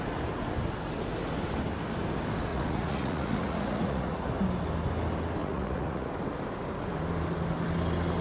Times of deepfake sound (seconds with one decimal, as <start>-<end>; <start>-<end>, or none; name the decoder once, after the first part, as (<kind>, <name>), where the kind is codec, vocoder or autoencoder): 2.5-4.2 (vocoder, Vocos); 5.4-6.1